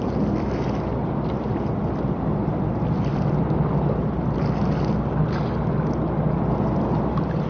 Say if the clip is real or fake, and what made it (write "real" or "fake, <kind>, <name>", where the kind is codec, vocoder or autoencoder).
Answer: real